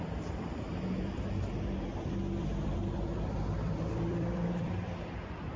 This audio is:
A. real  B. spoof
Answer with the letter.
B